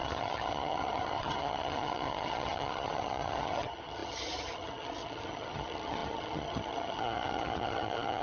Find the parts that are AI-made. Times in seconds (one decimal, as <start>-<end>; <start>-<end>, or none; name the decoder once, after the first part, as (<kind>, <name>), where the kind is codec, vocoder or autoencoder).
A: 0.0-8.2 (vocoder, HiFi-GAN)